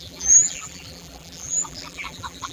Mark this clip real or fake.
fake